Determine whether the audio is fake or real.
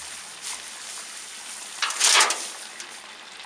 real